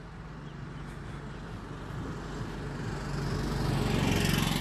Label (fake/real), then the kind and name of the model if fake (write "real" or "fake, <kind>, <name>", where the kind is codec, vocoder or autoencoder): real